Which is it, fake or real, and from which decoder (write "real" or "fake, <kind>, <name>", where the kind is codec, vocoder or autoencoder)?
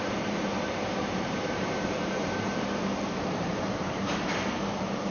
fake, vocoder, BigVGAN v2